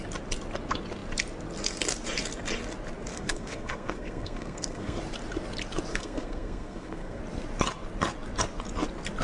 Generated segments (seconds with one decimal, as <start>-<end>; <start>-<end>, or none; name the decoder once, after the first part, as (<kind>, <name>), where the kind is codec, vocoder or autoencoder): 3.1-5.0 (codec, SNAC); 5.9-7.2